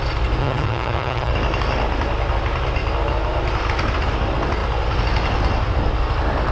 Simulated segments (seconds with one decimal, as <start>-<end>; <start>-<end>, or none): 0.4-1.3